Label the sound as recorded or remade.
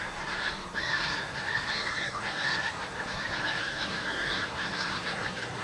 remade